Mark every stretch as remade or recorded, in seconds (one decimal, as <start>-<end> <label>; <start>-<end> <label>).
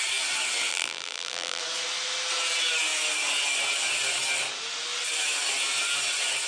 0.0-0.7 recorded; 0.7-1.6 remade; 1.6-6.5 recorded